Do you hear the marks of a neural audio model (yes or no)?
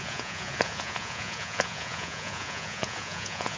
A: yes